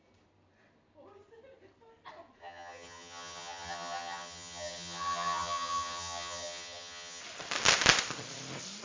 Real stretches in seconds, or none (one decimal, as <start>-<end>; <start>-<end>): 0.0-2.4; 7.2-8.8